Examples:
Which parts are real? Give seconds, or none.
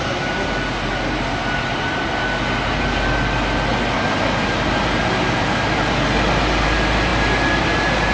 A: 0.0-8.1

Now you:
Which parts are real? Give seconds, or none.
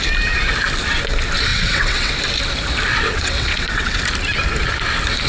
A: 0.0-1.5; 2.1-2.9; 4.0-5.3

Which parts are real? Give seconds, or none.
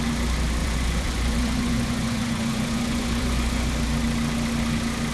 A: 0.0-0.6; 3.7-5.1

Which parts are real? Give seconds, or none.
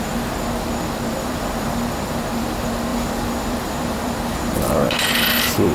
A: none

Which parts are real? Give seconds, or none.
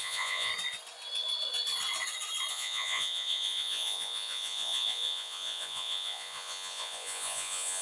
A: 0.5-2.5